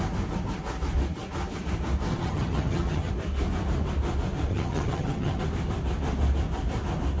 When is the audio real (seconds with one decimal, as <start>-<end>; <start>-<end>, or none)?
0.0-2.1; 3.1-4.5; 5.4-7.2

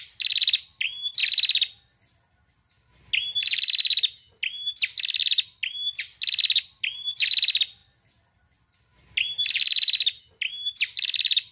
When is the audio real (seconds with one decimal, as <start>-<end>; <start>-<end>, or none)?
0.0-11.5